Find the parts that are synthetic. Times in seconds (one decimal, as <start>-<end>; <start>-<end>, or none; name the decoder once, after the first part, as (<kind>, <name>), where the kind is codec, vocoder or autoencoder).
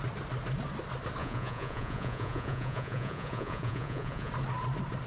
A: 1.2-4.3 (vocoder, Vocos)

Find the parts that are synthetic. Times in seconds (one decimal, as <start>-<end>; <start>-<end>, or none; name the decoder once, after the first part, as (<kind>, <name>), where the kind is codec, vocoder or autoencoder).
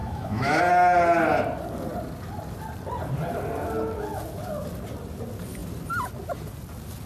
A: 0.0-0.6 (autoencoder, DAC-VAE)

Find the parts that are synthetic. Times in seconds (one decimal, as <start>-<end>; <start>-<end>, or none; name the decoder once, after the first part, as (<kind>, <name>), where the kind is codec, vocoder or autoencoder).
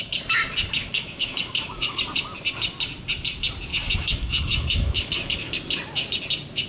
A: 0.8-2.0 (autoencoder, DAC-VAE); 3.7-5.5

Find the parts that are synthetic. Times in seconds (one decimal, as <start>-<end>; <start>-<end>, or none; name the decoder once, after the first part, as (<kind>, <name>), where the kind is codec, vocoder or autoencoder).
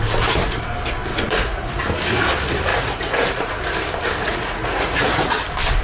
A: 1.1-1.8 (vocoder, Vocos); 2.7-3.5; 4.2-5.1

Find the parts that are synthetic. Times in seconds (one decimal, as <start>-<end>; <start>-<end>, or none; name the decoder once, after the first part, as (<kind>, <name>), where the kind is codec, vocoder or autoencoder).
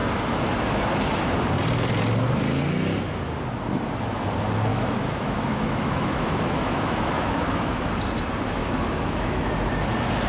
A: 4.7-7.9 (autoencoder, DAC-VAE); 8.6-9.5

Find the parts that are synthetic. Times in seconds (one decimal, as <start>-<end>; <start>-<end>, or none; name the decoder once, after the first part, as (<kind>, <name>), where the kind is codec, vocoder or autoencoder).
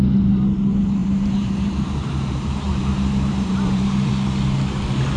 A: 1.0-4.1 (vocoder, BigVGAN v2)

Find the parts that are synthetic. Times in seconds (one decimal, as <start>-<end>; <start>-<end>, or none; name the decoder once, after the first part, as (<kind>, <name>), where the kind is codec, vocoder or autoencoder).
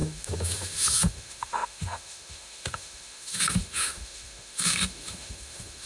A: 0.0-5.9 (autoencoder, DAC-VAE)